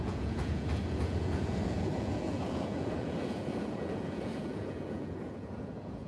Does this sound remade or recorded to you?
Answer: remade